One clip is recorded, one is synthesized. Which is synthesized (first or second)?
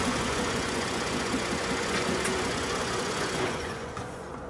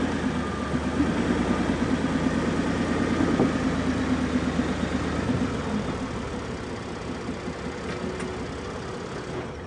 first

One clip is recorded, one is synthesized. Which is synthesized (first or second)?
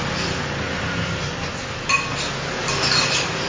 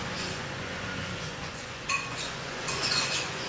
second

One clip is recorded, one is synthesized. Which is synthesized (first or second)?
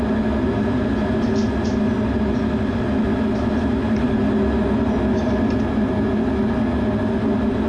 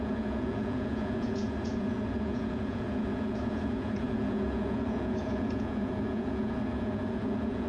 second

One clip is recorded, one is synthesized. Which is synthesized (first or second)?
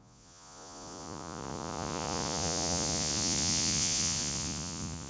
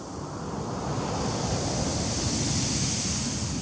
first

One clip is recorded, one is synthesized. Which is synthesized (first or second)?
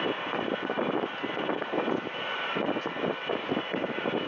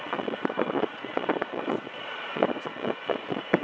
second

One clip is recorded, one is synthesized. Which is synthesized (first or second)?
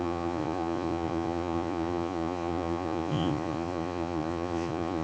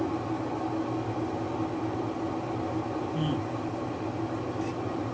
first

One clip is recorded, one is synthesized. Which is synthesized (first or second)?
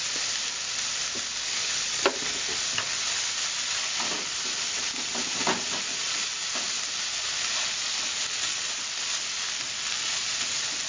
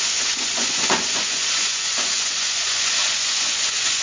second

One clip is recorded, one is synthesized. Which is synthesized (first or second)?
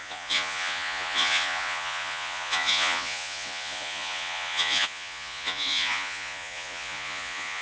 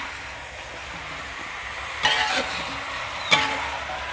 first